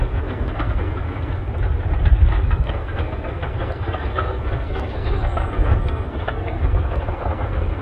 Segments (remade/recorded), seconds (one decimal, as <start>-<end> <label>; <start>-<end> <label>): 0.0-1.5 remade; 1.5-2.1 recorded; 2.1-7.8 remade